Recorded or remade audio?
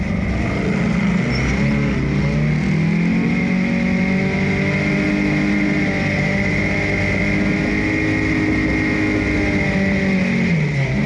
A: recorded